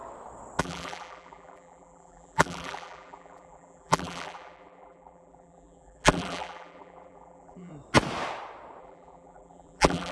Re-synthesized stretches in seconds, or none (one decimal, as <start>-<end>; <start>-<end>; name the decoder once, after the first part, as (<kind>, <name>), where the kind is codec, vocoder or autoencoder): 0.6-7.7 (vocoder, BigVGAN v2); 8.8-10.1

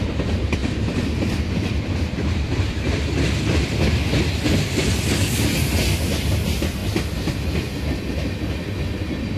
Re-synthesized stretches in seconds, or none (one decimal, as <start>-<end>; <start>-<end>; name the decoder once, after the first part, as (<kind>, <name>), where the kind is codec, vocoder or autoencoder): 0.6-3.4 (vocoder, BigVGAN v2)